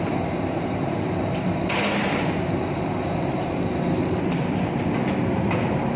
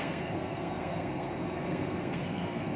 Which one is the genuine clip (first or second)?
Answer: first